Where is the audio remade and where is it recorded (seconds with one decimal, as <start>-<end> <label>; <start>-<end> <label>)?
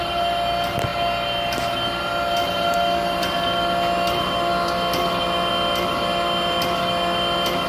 0.0-7.7 recorded